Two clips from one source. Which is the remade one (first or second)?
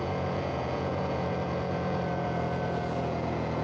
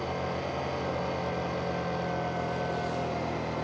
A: first